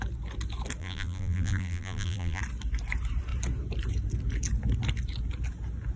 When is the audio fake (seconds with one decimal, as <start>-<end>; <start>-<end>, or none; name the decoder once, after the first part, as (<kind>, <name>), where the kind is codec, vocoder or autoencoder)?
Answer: 0.8-2.4 (vocoder, BigVGAN v2)